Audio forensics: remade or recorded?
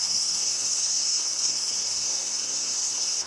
remade